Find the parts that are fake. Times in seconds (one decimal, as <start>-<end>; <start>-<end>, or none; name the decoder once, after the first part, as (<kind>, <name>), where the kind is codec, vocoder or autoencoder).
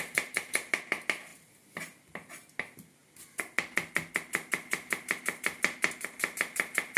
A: none